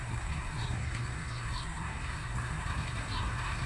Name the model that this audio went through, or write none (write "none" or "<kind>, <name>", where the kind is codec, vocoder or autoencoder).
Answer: codec, SNAC